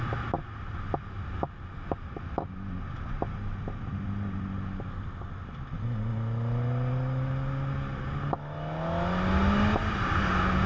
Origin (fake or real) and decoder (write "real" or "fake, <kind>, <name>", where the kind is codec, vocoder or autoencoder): real